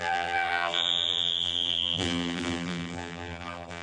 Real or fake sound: fake